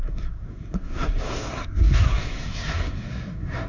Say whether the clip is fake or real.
fake